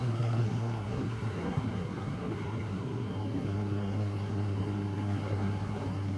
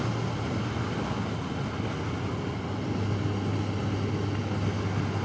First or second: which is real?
second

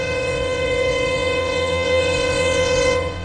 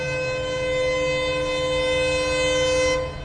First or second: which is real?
second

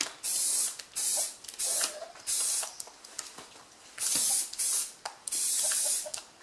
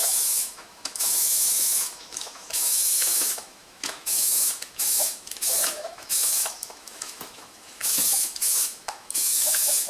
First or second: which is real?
first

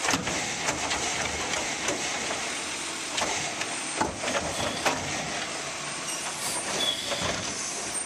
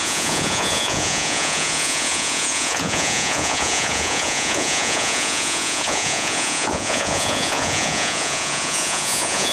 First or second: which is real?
first